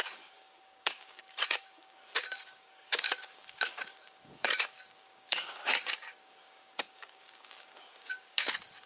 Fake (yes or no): yes